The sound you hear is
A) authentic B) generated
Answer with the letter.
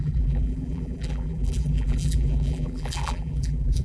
B